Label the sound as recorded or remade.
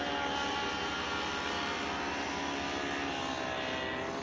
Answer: recorded